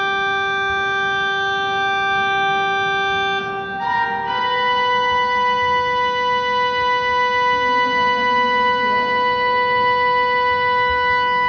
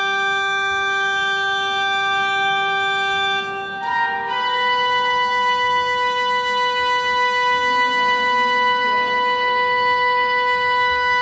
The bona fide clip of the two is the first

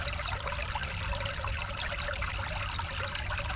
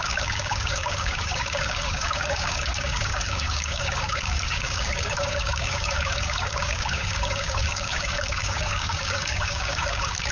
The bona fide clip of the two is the first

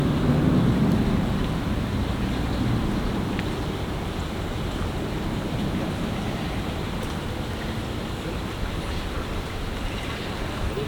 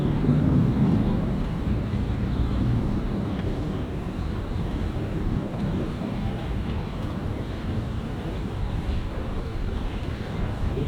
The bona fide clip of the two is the first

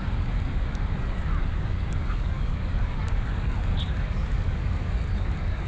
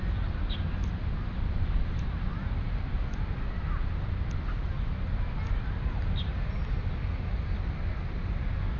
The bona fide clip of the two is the second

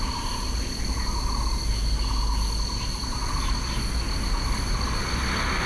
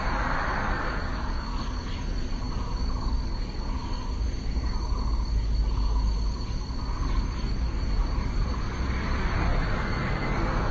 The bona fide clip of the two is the first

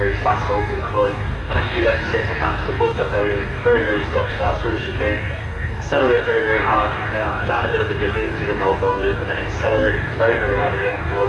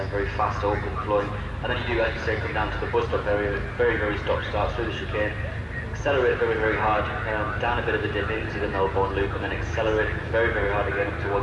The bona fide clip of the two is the second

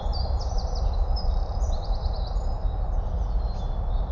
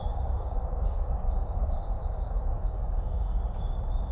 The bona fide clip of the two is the first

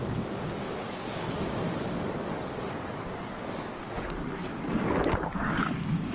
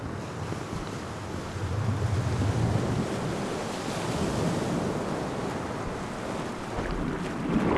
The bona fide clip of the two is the second